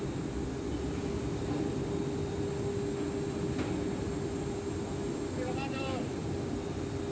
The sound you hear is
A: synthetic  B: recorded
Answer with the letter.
B